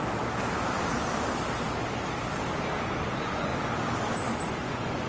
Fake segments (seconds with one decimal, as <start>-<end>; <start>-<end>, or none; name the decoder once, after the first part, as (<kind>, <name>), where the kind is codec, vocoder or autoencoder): 3.1-3.5 (vocoder, Vocos); 4.5-5.1